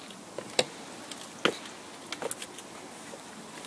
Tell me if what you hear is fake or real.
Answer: real